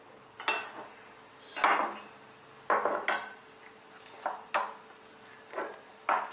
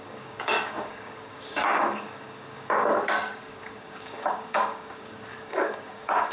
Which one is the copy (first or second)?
second